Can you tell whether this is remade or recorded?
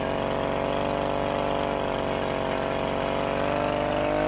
recorded